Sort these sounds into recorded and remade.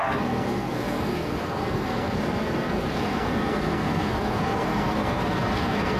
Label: remade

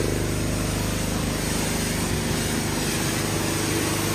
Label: recorded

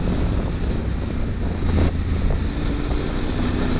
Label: recorded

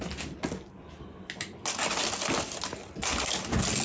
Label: recorded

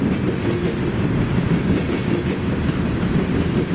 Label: recorded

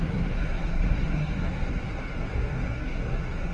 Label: remade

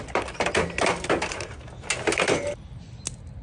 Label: recorded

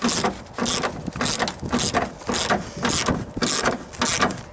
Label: recorded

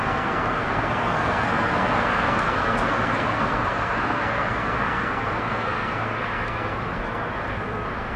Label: remade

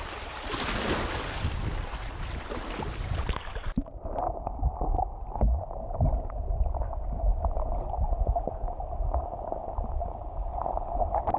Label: recorded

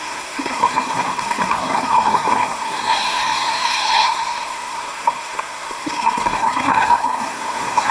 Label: remade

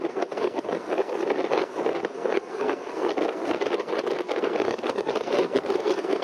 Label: remade